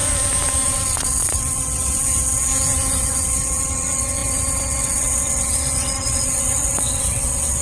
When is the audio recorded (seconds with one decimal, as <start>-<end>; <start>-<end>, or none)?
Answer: 0.0-0.7; 2.5-3.0